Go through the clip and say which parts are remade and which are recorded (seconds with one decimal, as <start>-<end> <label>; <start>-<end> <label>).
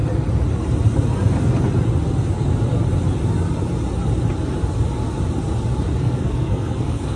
0.0-6.0 recorded; 6.0-7.2 remade